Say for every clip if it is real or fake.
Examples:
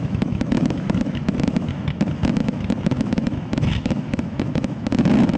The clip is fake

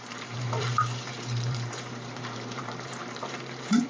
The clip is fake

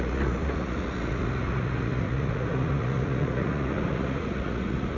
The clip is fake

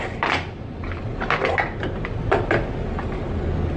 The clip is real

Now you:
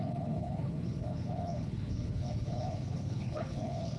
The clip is fake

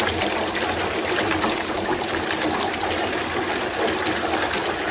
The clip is real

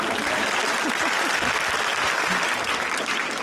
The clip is real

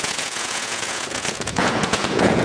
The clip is fake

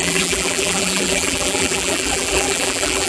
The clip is fake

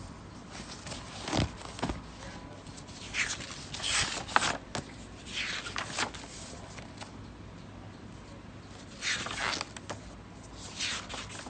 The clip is real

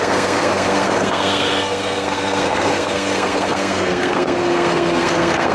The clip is fake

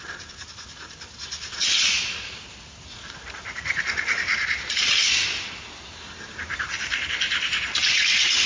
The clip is real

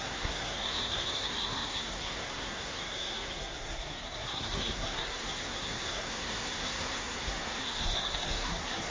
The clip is fake